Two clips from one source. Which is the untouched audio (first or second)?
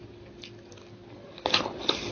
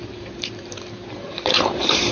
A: first